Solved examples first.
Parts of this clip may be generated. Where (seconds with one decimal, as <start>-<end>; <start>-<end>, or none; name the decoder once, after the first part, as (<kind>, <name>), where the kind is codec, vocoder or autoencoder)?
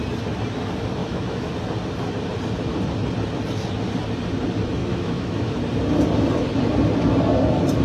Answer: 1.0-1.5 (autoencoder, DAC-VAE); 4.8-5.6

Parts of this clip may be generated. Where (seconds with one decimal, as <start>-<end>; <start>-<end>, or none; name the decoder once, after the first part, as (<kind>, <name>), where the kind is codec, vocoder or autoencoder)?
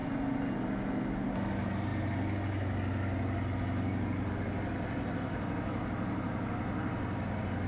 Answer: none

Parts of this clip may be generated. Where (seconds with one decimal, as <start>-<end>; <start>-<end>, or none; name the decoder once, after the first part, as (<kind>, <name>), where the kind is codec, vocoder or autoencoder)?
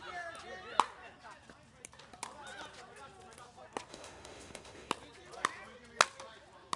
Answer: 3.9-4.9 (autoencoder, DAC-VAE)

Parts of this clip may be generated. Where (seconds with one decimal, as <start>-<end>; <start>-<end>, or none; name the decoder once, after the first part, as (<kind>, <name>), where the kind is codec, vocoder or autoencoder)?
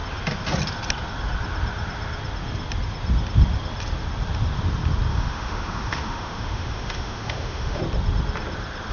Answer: 5.1-7.8 (autoencoder, DAC-VAE)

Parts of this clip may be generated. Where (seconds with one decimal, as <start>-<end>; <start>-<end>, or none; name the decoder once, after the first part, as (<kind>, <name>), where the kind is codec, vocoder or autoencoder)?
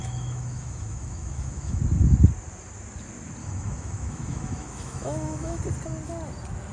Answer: 0.0-1.8 (autoencoder, DAC-VAE); 3.4-5.6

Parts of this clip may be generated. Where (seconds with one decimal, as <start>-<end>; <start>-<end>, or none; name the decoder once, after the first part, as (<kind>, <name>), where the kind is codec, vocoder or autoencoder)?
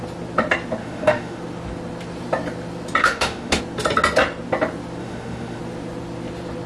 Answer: 0.8-1.4 (autoencoder, DAC-VAE); 3.0-3.6; 5.0-5.6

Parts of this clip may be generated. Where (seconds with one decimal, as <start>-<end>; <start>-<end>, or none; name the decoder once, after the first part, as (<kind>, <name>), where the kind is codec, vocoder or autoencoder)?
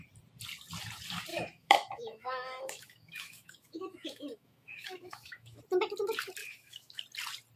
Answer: 1.3-5.6 (autoencoder, DAC-VAE); 6.4-7.0